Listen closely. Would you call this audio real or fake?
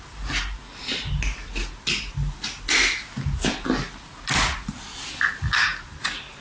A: real